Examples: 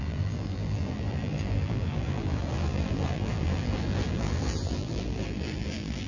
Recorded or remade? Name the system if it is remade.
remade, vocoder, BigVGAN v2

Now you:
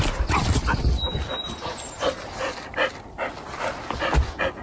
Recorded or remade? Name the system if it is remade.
recorded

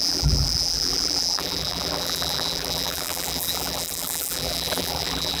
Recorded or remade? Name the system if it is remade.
remade, vocoder, BigVGAN v2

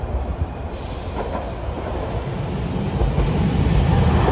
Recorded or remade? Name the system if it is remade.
recorded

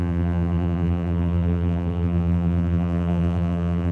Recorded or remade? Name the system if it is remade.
remade, vocoder, BigVGAN v2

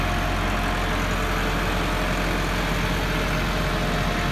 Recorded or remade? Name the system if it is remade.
recorded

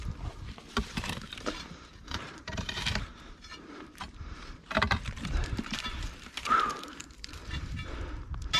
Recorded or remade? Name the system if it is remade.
remade, vocoder, BigVGAN v2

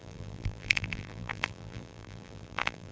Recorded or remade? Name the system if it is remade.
remade, vocoder, BigVGAN v2